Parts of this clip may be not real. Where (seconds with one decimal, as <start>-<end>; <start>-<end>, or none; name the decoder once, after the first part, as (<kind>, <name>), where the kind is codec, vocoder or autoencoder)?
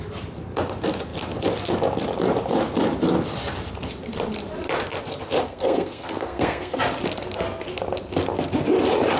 5.4-6.8 (codec, SNAC)